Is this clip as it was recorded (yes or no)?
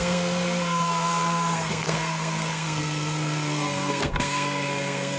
no